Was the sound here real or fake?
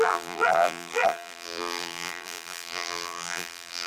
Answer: fake